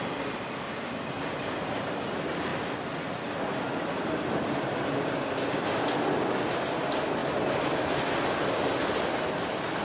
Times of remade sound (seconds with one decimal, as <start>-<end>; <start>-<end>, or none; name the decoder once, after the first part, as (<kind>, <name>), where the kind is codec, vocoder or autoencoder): none